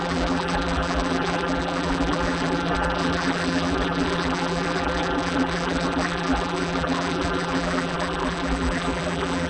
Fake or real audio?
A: fake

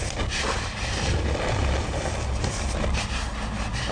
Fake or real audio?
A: real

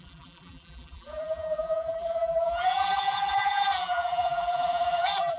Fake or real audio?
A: fake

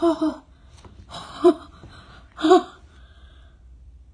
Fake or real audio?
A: fake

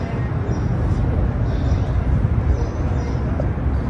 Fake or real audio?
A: real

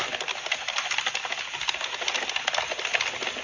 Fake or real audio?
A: real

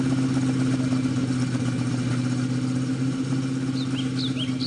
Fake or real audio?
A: real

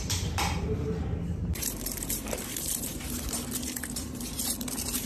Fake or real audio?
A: fake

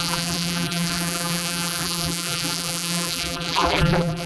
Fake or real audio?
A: fake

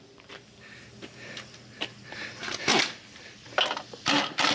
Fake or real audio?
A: fake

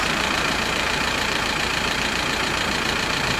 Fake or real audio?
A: fake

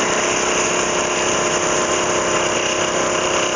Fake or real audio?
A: real